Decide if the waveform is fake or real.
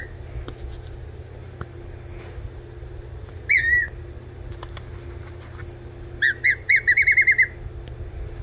real